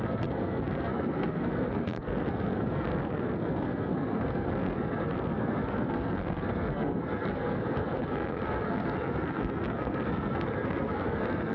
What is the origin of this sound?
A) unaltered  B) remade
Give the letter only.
B